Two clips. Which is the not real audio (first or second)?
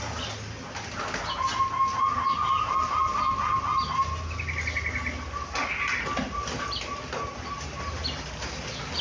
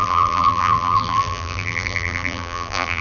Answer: second